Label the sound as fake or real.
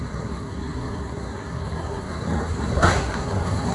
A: fake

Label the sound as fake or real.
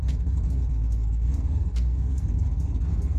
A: fake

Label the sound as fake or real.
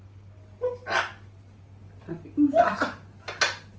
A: real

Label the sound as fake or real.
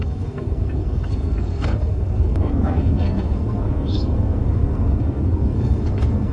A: fake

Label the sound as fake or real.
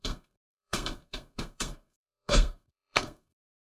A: fake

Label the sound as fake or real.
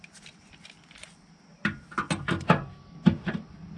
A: real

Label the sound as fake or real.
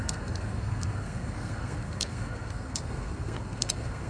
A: fake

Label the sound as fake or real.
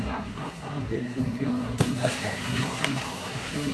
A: fake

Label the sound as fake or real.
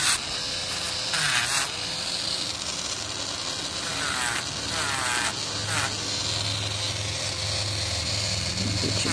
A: real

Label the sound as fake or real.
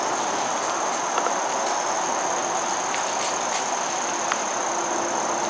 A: real